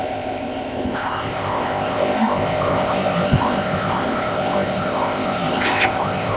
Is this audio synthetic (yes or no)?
yes